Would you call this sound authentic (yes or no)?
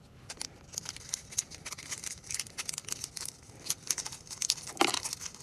yes